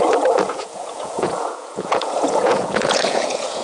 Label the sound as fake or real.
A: fake